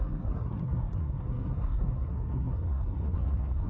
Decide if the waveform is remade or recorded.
remade